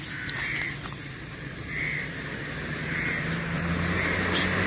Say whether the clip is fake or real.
fake